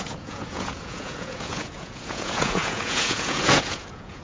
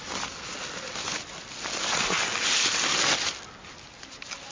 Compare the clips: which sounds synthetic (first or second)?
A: first